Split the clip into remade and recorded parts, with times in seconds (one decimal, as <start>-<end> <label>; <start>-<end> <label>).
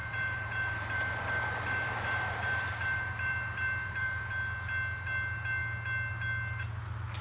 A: 0.0-4.3 remade; 4.3-7.2 recorded